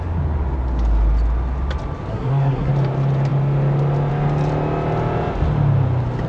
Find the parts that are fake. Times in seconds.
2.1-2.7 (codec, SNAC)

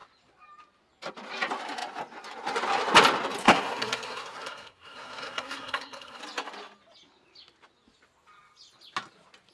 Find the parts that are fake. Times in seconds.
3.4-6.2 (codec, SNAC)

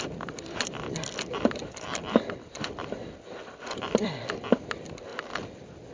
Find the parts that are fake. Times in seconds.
0.0-5.1 (vocoder, BigVGAN v2)

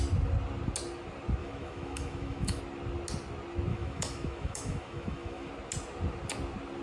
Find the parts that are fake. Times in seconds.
1.4-2.6 (autoencoder, DAC-VAE); 3.7-5.5

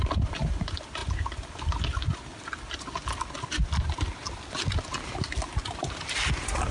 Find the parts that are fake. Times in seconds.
0.0-2.3 (vocoder, BigVGAN v2); 5.8-6.7